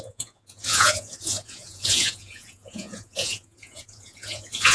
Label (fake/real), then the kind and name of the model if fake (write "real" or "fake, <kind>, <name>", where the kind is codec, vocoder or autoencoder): fake, vocoder, Vocos